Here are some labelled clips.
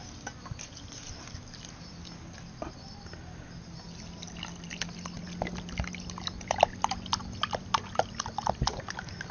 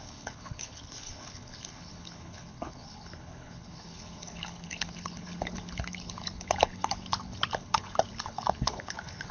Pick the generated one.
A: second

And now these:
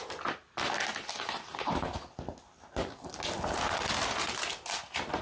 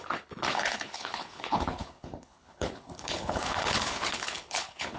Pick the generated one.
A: second